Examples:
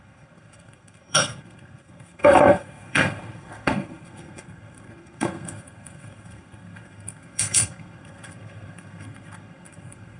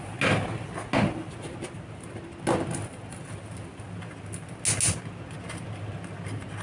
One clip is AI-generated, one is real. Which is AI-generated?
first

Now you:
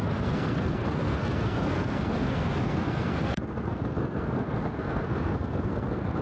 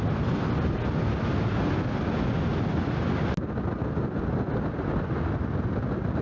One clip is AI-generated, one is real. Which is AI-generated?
first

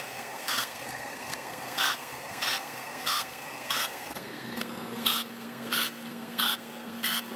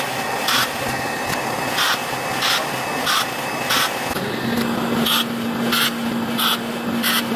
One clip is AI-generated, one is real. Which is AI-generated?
first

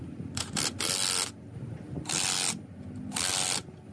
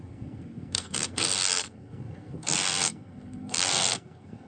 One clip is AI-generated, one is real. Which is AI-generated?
second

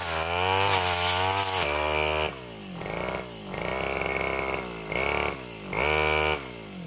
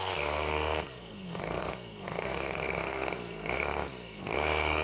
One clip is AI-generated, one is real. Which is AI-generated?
second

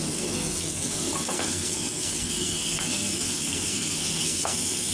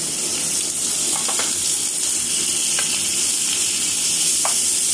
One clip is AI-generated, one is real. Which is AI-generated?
first